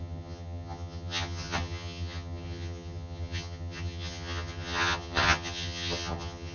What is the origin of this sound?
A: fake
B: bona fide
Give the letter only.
A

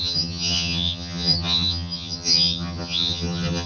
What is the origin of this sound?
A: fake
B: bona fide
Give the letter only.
A